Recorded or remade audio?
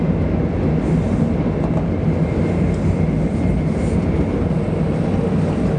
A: recorded